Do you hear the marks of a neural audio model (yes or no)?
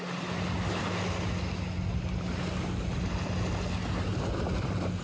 no